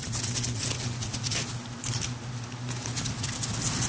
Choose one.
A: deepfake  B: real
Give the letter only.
B